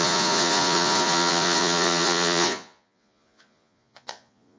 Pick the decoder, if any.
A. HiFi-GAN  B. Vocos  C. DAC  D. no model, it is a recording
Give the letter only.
B